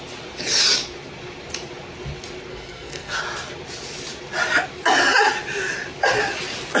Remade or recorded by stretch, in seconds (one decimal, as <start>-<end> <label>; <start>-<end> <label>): 0.0-2.5 recorded; 2.5-3.2 remade; 3.2-6.8 recorded